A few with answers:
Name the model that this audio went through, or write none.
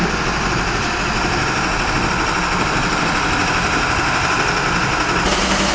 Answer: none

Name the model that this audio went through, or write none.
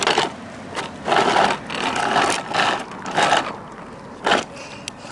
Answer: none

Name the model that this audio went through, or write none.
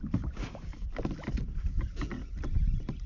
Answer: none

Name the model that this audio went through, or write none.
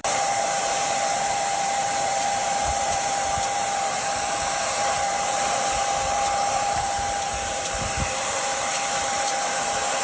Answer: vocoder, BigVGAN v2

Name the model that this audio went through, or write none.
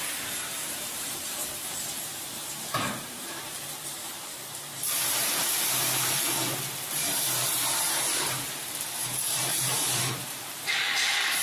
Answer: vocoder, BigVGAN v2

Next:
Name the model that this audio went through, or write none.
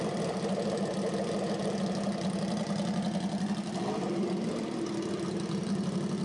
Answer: vocoder, BigVGAN v2